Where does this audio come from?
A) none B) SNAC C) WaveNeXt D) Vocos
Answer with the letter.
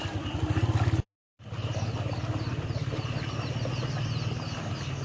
A